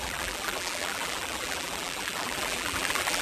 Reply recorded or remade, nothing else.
remade